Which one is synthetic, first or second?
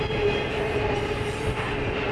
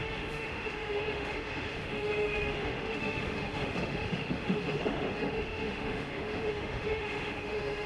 second